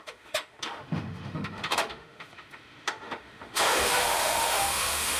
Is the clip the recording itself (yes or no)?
no